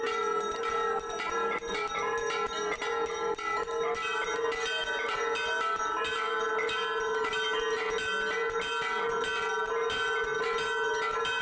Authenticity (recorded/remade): recorded